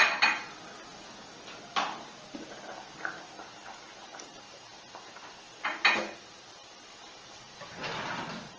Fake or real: real